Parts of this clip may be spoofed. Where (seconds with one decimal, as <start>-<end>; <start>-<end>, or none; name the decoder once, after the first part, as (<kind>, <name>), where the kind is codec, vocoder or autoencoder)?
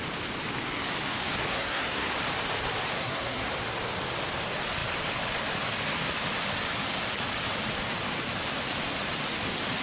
1.4-2.1 (codec, SNAC); 2.9-3.5